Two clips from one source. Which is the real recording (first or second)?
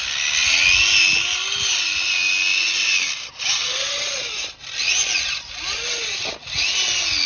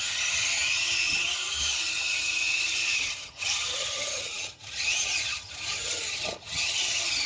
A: first